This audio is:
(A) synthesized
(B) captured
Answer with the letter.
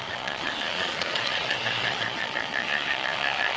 A